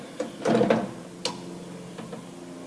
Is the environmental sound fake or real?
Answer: real